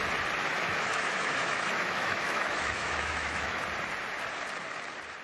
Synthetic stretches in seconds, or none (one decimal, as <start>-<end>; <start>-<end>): 0.5-3.6